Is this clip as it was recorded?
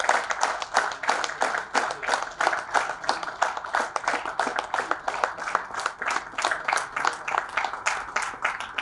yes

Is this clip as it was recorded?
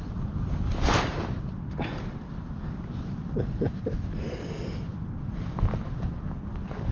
no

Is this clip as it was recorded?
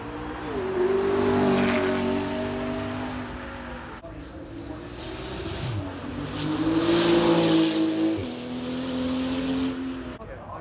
yes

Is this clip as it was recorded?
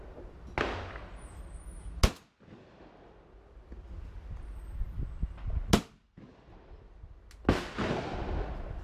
yes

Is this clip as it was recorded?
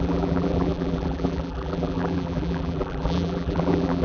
no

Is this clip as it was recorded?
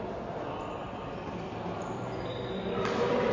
yes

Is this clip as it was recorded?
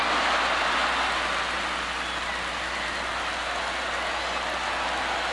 yes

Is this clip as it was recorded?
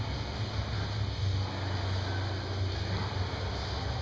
yes